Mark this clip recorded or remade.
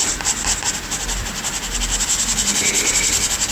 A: recorded